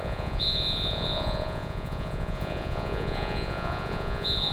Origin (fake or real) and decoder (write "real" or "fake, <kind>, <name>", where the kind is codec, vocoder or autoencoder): fake, vocoder, Vocos